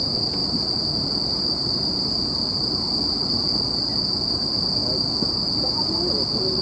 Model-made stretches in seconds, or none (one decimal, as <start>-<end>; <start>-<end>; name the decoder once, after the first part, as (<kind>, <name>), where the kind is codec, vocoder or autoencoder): none